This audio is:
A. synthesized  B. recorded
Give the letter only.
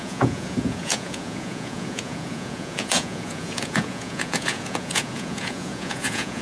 A